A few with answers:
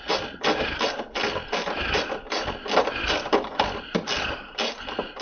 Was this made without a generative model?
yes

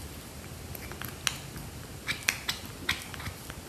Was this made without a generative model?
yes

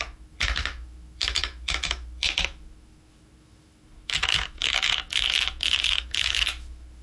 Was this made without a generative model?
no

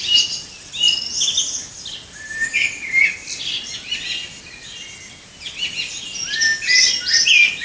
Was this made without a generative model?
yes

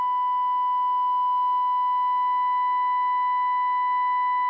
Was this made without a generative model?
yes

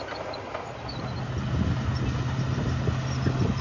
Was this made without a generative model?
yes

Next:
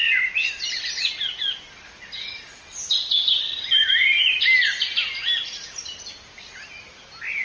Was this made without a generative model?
yes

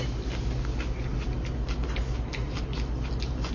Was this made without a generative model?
yes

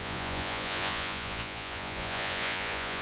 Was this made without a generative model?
no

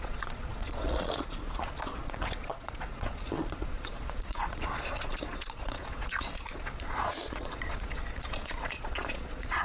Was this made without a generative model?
no